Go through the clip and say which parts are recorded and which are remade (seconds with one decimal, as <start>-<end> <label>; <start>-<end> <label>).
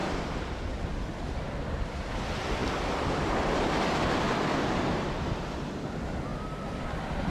0.0-2.6 remade; 2.6-4.4 recorded; 4.4-7.3 remade